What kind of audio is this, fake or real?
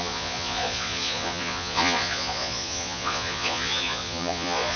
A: fake